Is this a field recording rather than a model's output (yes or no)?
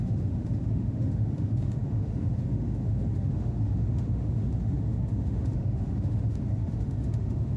no